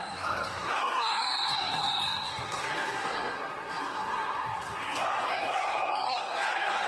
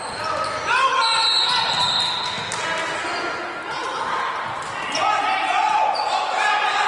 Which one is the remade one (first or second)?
first